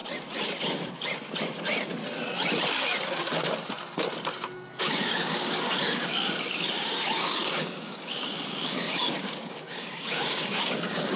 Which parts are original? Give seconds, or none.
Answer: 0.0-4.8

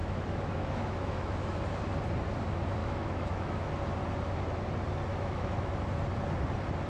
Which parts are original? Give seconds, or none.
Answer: 1.6-2.8; 3.7-5.1; 5.7-6.9

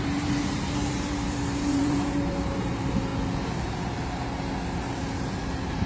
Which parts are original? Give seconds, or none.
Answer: 3.1-5.0

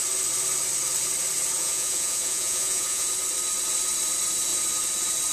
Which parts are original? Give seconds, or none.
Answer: 0.0-1.6; 3.1-5.3

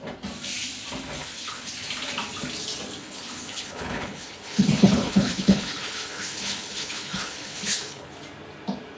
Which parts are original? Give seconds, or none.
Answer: 0.0-1.2; 1.7-3.0; 8.1-9.0

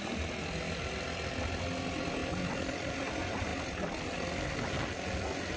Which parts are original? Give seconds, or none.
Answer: 0.0-2.2; 3.1-5.6